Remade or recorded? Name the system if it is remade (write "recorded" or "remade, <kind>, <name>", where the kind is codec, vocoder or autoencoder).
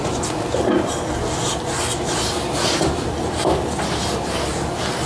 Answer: recorded